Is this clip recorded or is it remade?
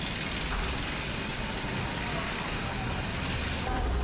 recorded